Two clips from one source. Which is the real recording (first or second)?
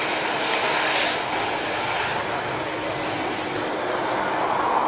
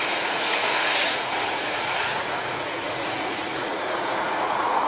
first